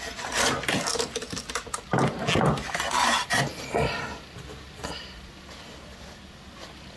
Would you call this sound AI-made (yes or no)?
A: no